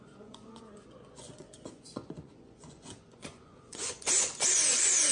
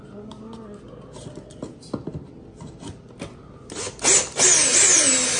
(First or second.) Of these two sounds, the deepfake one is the first